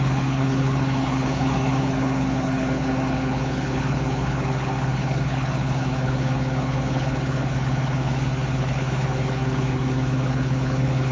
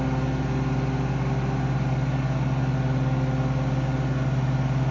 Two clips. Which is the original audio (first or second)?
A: second